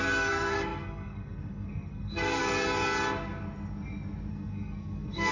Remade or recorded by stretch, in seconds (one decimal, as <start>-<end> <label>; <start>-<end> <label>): 0.0-2.4 remade; 2.4-4.3 recorded; 4.3-5.3 remade

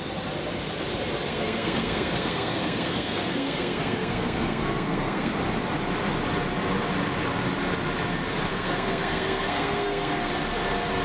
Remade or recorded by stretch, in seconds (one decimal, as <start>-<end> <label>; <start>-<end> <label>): 0.0-1.3 recorded; 1.3-5.3 remade; 5.3-8.5 recorded; 8.5-10.3 remade; 10.3-11.0 recorded